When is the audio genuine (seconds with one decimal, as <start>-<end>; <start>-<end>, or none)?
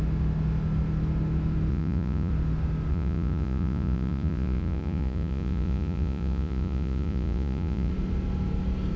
0.0-1.7; 2.3-2.9; 7.9-9.0